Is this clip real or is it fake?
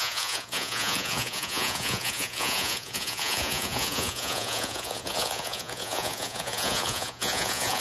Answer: fake